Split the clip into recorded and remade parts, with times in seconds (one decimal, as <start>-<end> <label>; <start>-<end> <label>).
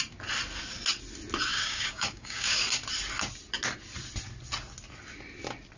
0.0-1.5 recorded; 1.5-2.6 remade; 2.6-5.8 recorded